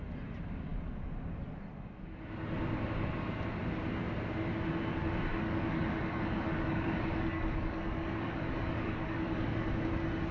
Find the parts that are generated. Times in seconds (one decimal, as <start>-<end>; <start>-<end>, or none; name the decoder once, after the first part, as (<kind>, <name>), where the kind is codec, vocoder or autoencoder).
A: 5.3-9.7 (codec, DAC)